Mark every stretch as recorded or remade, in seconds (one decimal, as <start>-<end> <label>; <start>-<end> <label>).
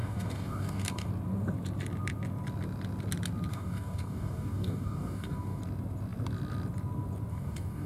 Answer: 0.0-1.1 remade; 1.1-3.5 recorded; 3.5-5.6 remade; 5.6-7.3 recorded; 7.3-7.9 remade